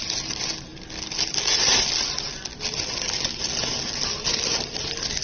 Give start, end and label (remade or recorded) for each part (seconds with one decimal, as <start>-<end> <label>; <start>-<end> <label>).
0.0-5.2 recorded